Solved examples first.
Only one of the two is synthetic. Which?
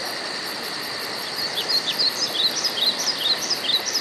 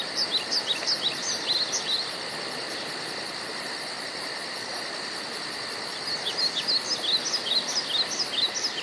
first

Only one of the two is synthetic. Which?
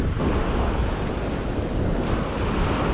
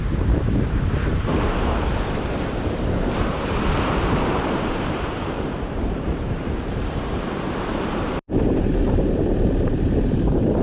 second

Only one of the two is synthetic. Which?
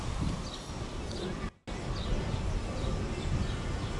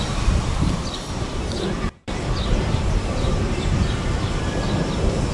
second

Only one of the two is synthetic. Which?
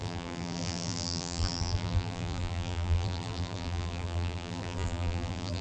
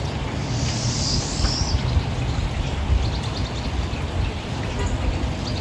first